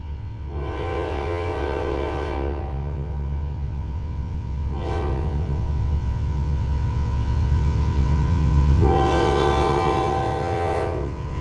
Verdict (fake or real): fake